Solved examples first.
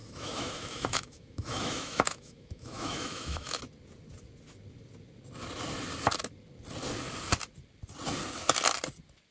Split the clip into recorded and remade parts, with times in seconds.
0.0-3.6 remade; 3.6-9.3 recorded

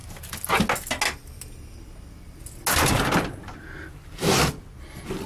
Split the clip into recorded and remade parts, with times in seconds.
0.0-5.3 recorded

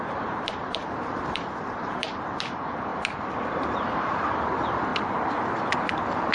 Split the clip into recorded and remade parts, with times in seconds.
0.0-2.9 remade; 2.9-3.5 recorded; 3.5-6.3 remade

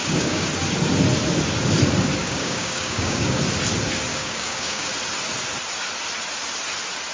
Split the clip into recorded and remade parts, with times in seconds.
0.0-0.5 remade; 0.5-2.2 recorded; 2.2-3.4 remade; 3.4-4.1 recorded; 4.1-4.9 remade; 4.9-7.1 recorded

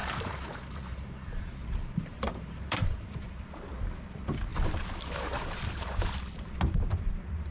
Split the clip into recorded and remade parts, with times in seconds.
0.0-3.7 remade; 3.7-4.5 recorded; 4.5-6.1 remade; 6.1-7.5 recorded

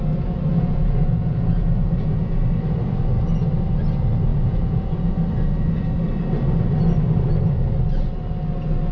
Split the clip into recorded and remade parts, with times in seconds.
0.0-0.5 recorded; 0.5-2.4 remade; 2.4-4.3 recorded; 4.3-5.1 remade; 5.1-8.9 recorded

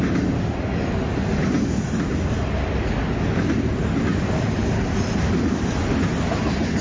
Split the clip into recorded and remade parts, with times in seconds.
0.0-6.8 recorded